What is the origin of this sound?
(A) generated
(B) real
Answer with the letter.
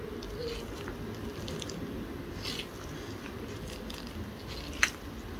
B